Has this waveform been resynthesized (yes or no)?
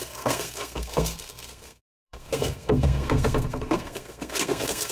yes